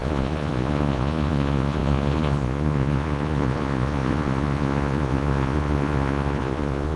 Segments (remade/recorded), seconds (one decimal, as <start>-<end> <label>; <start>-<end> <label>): 0.0-7.0 remade